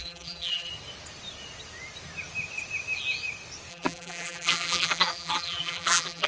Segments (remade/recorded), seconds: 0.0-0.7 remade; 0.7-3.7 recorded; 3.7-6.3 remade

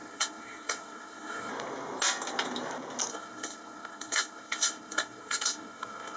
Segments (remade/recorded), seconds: 0.0-1.5 remade; 1.5-3.1 recorded; 3.1-6.2 remade

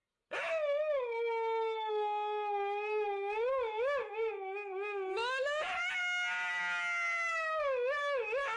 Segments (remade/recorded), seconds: 0.0-8.6 recorded

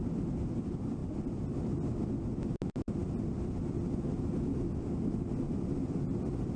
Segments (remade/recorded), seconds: 0.0-6.6 recorded